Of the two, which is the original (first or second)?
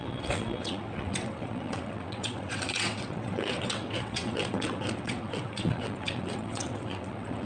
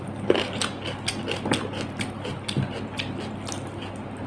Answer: second